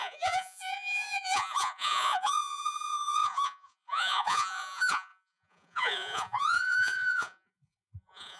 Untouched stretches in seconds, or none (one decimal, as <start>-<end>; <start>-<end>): none